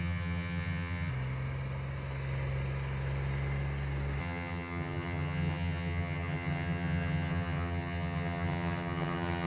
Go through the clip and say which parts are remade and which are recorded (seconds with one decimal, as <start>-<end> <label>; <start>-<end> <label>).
0.0-1.1 remade; 1.1-4.2 recorded; 4.2-9.5 remade